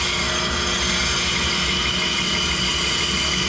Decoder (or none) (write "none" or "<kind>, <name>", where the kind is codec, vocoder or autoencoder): none